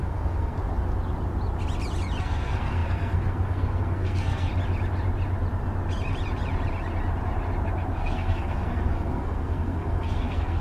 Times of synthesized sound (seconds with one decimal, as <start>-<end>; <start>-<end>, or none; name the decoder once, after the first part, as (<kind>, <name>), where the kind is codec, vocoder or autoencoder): 0.0-0.6 (codec, SNAC); 2.2-4.5; 8.0-10.6